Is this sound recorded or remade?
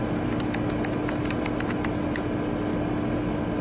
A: recorded